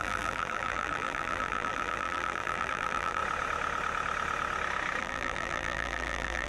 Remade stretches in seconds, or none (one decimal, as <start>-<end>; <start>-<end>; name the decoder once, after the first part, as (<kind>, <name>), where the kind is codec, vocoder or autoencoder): 0.0-3.2 (vocoder, BigVGAN v2); 5.0-6.5